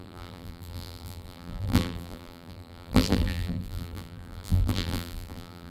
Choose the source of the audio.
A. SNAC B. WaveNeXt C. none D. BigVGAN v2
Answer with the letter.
D